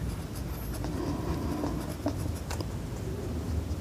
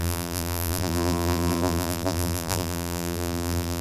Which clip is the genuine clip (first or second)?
first